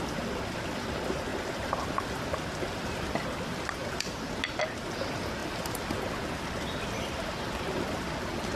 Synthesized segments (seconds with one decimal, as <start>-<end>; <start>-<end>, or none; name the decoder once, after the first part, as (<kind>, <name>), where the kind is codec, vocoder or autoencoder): none